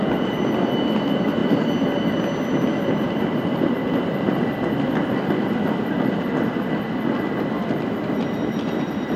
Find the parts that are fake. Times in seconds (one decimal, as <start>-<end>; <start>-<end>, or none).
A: 0.0-9.2